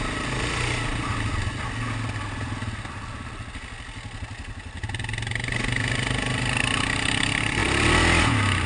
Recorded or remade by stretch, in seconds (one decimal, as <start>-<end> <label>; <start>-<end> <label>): 0.0-8.7 recorded